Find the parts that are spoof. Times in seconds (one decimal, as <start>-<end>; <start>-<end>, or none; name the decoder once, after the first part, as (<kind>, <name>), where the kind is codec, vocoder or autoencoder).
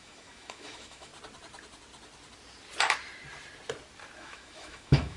0.0-1.1 (autoencoder, DAC-VAE); 4.2-5.2